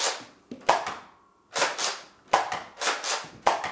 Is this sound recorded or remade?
recorded